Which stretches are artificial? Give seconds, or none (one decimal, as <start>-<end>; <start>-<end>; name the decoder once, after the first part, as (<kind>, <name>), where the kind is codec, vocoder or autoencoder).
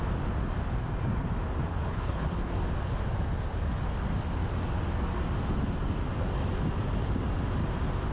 1.7-2.5 (codec, HILCodec)